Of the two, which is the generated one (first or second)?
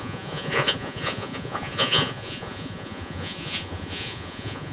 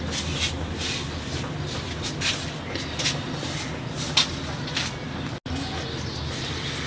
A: first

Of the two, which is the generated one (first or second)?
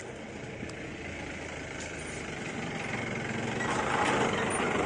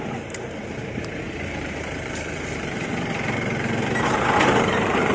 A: second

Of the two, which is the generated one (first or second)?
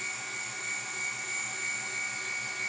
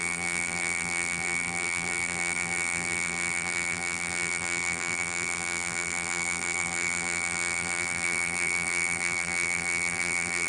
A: second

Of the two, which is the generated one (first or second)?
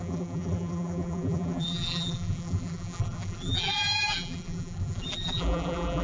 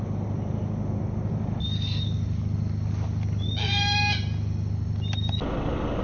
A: first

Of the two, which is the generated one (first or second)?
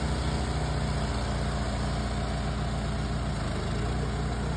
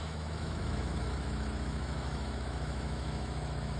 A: second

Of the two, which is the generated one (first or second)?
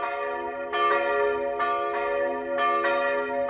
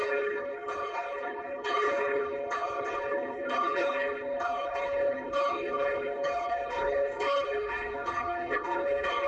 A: second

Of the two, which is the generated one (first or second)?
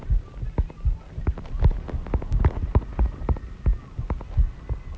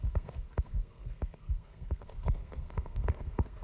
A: second